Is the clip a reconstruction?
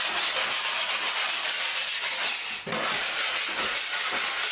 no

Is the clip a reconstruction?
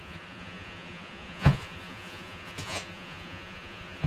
yes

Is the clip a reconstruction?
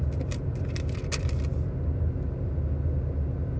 no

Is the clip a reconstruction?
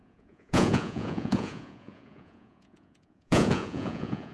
yes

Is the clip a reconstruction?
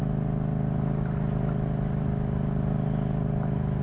no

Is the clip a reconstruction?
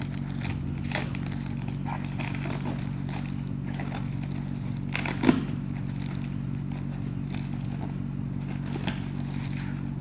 no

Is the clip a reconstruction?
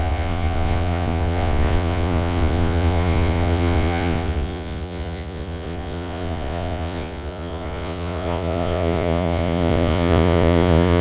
yes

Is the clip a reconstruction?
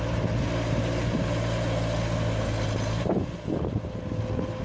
no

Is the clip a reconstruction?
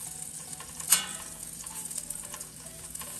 yes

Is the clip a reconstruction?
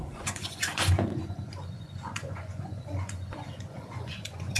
yes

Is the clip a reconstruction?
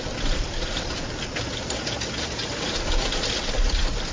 no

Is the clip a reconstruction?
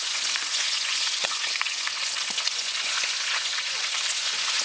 yes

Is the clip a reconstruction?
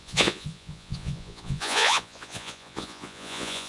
yes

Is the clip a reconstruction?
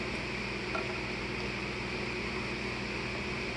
no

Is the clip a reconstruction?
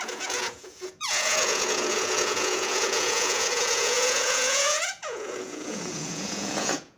yes